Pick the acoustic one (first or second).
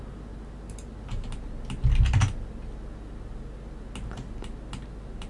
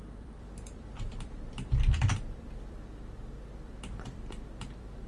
first